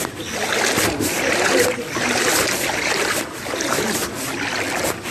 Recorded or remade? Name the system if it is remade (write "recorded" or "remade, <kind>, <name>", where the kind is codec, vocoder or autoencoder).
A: recorded